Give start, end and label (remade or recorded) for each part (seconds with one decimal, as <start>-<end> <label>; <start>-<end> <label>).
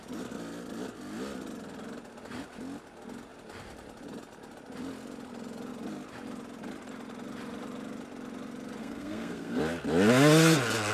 0.0-8.8 recorded; 8.8-9.6 remade; 9.6-10.9 recorded